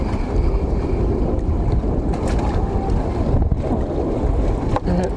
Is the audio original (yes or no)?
yes